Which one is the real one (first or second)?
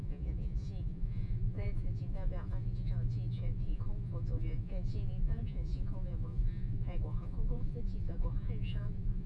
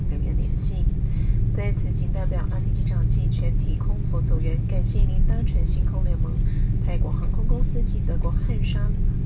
second